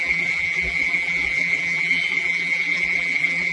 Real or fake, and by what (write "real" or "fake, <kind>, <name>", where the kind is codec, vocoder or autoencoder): fake, vocoder, BigVGAN v2